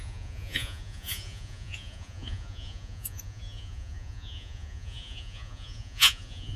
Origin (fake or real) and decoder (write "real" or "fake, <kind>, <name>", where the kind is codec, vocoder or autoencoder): fake, vocoder, Vocos